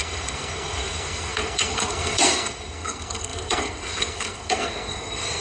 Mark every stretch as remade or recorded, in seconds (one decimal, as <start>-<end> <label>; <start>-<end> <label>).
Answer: 0.0-5.4 remade